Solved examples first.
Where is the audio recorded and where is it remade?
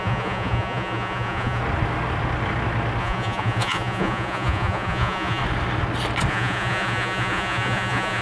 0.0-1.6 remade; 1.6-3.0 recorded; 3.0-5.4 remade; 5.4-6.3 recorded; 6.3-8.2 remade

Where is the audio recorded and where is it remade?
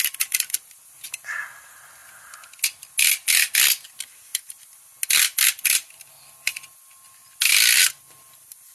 0.0-8.7 recorded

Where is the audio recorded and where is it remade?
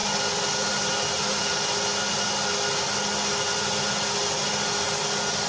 0.0-5.5 recorded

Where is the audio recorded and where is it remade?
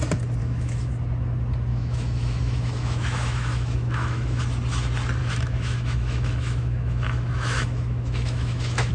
0.0-0.4 recorded; 0.4-0.9 remade; 0.9-1.7 recorded; 1.7-4.4 remade; 4.4-5.2 recorded; 5.2-8.9 remade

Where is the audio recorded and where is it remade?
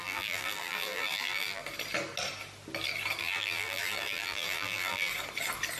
0.0-1.6 remade; 1.6-3.2 recorded; 3.2-5.1 remade; 5.1-5.8 recorded